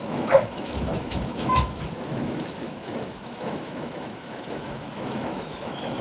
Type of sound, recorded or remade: remade